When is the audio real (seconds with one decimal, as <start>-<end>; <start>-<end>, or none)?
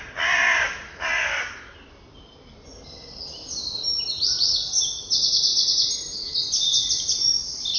0.0-7.8